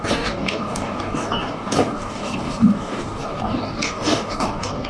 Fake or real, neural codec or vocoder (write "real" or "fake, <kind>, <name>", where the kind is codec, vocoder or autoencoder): fake, codec, DAC